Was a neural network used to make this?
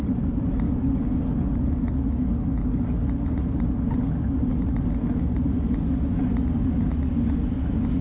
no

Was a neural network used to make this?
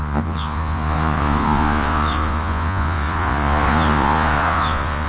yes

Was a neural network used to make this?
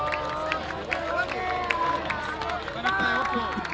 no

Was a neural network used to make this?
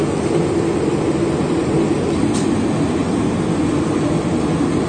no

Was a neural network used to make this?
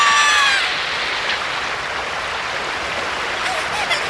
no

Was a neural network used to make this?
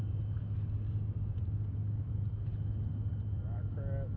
no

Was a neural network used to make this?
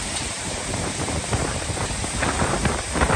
yes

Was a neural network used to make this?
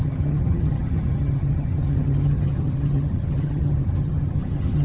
yes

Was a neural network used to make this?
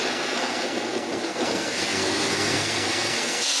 yes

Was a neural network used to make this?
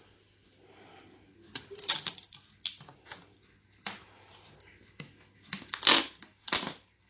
no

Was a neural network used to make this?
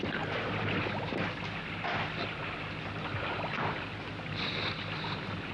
no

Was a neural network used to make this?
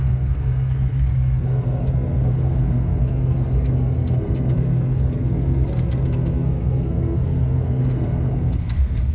yes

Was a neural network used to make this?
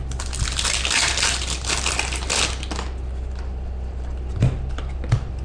no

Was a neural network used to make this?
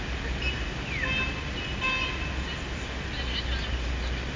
no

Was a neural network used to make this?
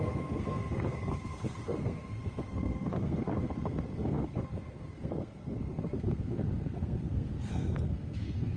yes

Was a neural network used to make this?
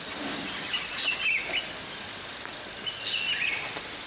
no